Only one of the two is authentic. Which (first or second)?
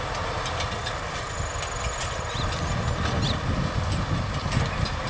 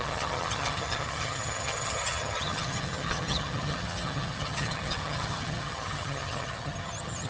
first